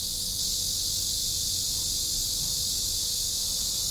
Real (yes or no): yes